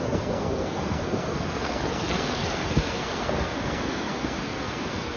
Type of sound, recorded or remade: remade